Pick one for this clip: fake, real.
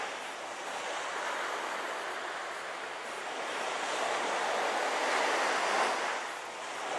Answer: real